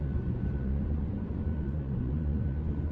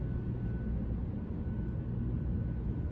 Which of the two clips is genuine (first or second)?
second